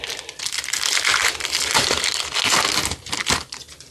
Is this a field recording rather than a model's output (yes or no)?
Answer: yes